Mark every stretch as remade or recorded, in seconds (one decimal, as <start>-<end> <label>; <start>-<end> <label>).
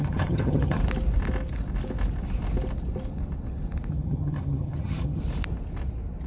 0.0-0.8 remade; 0.8-3.9 recorded; 3.9-5.2 remade; 5.2-6.3 recorded